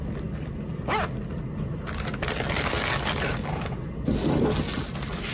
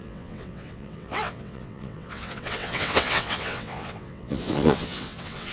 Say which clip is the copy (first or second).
second